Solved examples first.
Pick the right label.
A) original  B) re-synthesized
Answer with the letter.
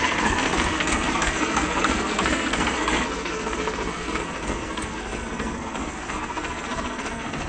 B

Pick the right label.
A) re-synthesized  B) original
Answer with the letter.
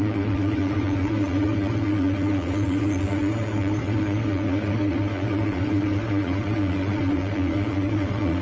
A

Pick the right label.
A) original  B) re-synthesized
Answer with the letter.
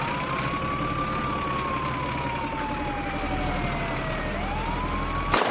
A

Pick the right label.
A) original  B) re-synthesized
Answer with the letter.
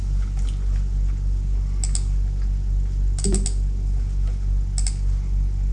A